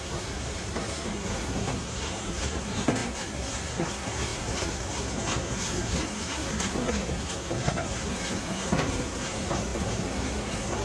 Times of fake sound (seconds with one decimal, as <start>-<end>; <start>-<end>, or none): 0.0-10.8

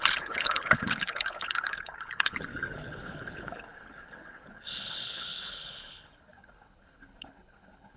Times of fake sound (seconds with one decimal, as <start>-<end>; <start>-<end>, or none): 0.0-8.0

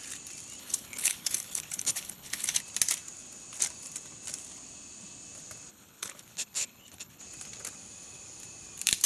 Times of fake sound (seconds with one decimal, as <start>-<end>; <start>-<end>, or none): 0.6-2.6; 5.7-7.2

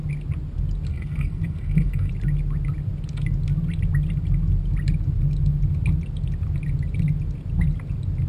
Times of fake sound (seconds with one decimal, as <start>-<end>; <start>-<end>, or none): 0.9-2.1